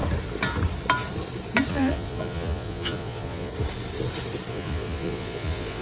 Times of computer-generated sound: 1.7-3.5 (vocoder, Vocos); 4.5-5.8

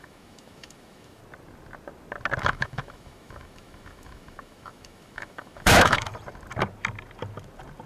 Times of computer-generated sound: 0.0-1.2 (autoencoder, DAC-VAE); 2.4-6.1

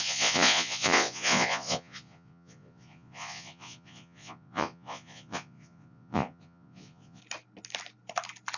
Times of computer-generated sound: 0.0-7.2 (vocoder, Vocos)

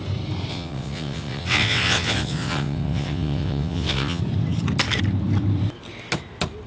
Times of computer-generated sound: 0.5-4.2 (vocoder, WaveNeXt)

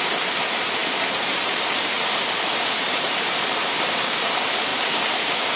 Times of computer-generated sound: 0.0-5.6 (vocoder, BigVGAN v2)

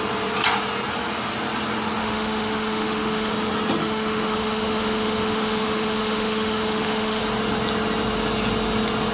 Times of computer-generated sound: 2.0-3.3 (autoencoder, DAC-VAE); 3.8-7.2

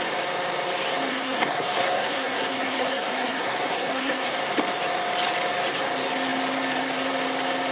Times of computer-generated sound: 1.1-4.3 (codec, SNAC)

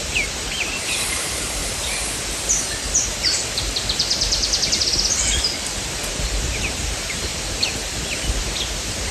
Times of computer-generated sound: 0.0-1.6 (vocoder, BigVGAN v2); 6.1-7.3; 8.4-9.1